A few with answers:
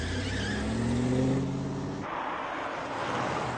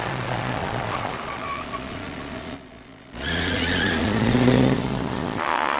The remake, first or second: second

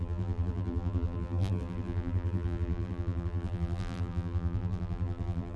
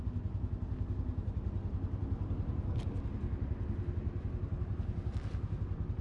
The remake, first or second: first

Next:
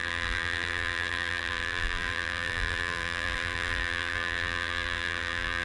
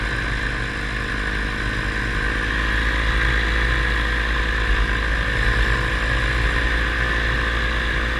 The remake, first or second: first